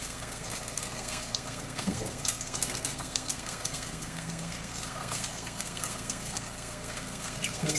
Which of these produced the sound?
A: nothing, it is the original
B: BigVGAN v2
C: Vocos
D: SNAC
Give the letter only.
D